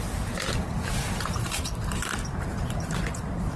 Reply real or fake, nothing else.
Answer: fake